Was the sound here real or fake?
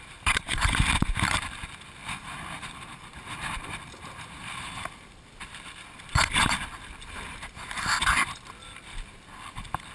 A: fake